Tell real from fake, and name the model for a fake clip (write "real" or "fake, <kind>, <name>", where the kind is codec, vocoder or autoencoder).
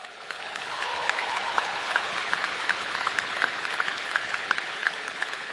fake, codec, HILCodec